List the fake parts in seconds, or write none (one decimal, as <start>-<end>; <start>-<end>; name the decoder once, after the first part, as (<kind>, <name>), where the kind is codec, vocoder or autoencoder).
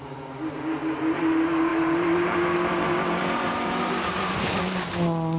1.7-4.6 (vocoder, BigVGAN v2)